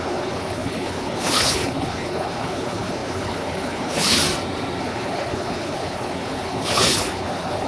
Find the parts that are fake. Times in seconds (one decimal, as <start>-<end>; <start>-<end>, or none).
0.0-4.2; 4.8-7.7